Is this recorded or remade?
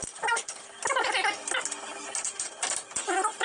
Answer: recorded